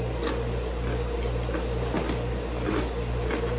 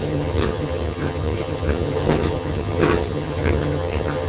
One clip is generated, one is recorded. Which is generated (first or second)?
second